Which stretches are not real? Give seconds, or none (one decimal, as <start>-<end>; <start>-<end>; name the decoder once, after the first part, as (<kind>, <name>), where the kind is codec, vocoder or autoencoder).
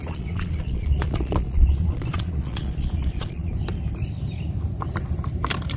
0.0-3.5 (vocoder, Vocos)